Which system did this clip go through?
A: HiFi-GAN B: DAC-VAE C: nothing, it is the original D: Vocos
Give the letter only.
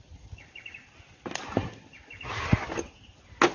C